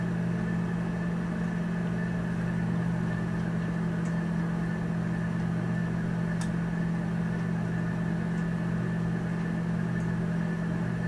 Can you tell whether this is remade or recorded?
recorded